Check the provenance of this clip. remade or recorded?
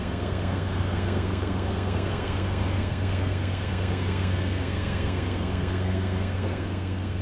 remade